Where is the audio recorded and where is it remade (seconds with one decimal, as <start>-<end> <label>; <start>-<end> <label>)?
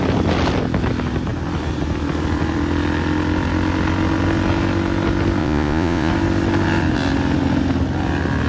0.0-5.4 recorded; 5.4-6.1 remade; 6.1-8.5 recorded